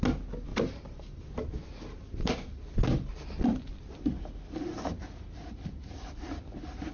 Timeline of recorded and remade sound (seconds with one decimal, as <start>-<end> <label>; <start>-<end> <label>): 0.0-0.5 recorded; 0.5-1.2 remade; 1.2-4.7 recorded; 4.7-6.4 remade; 6.4-6.9 recorded

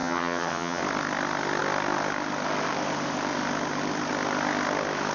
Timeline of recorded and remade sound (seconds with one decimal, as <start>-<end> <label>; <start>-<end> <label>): 0.0-0.8 remade; 0.8-5.1 recorded